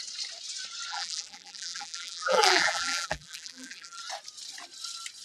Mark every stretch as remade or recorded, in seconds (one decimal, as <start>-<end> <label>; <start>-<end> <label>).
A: 0.0-0.9 recorded; 0.9-4.0 remade; 4.0-5.2 recorded

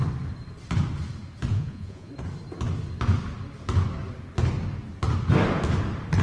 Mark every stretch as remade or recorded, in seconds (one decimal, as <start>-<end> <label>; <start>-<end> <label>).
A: 0.0-1.5 recorded; 1.5-2.1 remade; 2.1-6.2 recorded

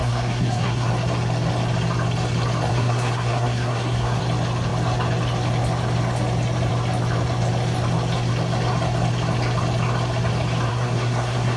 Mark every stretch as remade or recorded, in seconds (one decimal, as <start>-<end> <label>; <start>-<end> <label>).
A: 0.0-0.9 remade; 0.9-2.7 recorded; 2.7-4.2 remade; 4.2-10.7 recorded; 10.7-11.6 remade

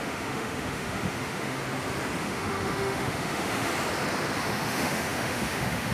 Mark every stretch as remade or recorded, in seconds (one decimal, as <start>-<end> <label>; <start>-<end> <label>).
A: 0.0-1.6 remade; 1.6-2.2 recorded; 2.2-3.7 remade; 3.7-4.4 recorded; 4.4-5.9 remade